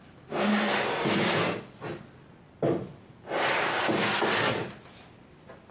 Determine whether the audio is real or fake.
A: real